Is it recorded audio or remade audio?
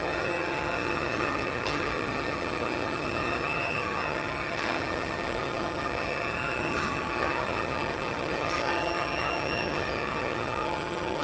remade